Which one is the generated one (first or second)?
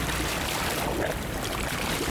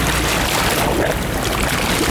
first